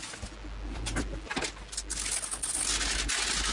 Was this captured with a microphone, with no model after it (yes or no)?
yes